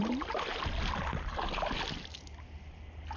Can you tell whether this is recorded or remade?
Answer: recorded